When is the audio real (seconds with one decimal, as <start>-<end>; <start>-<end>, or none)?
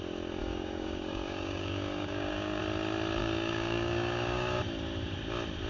0.0-0.4; 2.6-3.2; 4.6-5.7